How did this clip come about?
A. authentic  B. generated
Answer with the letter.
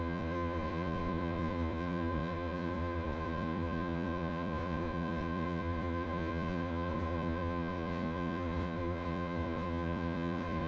B